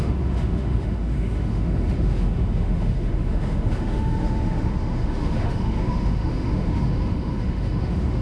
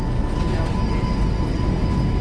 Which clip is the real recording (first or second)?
second